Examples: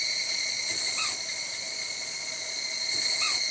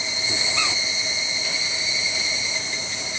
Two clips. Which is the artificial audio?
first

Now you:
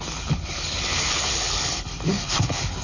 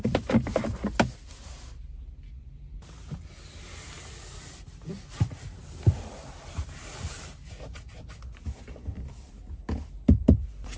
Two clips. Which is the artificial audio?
first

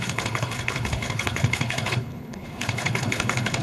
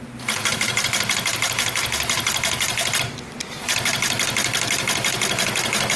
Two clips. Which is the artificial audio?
first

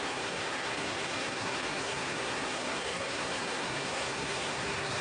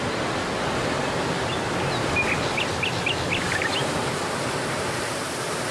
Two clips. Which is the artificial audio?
first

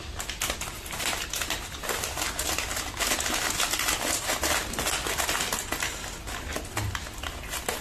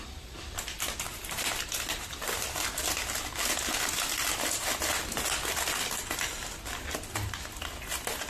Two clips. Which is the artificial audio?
second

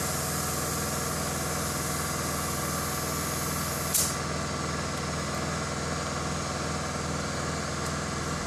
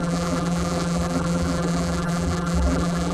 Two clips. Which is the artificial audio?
second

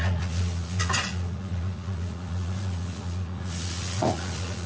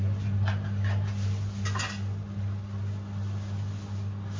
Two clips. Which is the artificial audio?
first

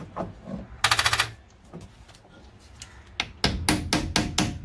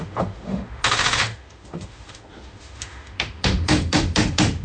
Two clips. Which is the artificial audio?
second